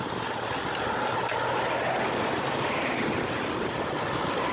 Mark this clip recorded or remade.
recorded